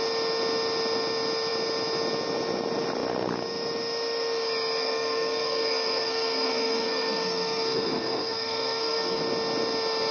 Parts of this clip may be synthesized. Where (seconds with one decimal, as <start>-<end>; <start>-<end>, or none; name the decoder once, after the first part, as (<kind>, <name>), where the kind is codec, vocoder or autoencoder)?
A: 4.8-9.2 (codec, SNAC)